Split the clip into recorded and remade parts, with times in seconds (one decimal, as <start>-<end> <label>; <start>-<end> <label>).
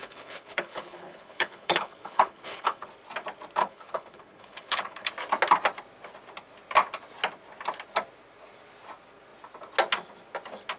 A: 0.0-2.9 remade; 2.9-3.6 recorded; 3.6-5.1 remade; 5.1-10.8 recorded